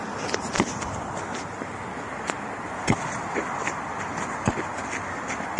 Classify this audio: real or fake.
real